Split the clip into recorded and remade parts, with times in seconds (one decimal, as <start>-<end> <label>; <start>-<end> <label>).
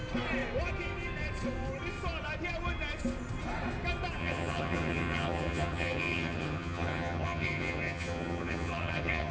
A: 0.0-4.2 recorded; 4.2-9.3 remade